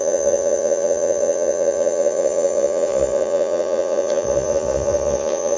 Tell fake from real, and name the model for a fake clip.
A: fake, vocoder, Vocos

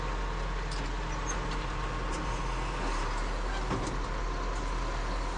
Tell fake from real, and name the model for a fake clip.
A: real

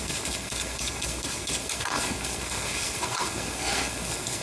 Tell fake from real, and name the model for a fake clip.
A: fake, codec, SNAC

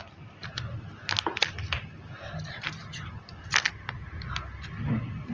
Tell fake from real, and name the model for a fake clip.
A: real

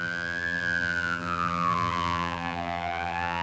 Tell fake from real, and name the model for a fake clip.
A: fake, vocoder, BigVGAN v2